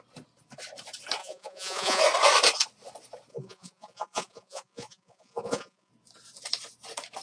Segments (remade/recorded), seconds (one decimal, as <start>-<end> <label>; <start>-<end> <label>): 0.0-1.2 recorded; 1.2-2.0 remade; 2.0-3.3 recorded; 3.3-5.9 remade; 5.9-7.2 recorded